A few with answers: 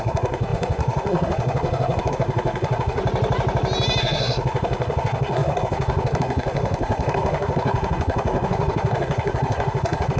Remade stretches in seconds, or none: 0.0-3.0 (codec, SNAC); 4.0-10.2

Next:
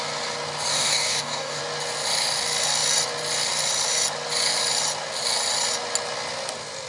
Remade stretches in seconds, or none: 0.7-1.6 (codec, DAC)